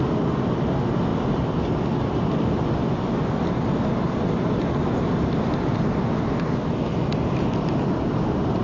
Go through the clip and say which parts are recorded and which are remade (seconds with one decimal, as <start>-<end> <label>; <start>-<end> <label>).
0.0-8.6 recorded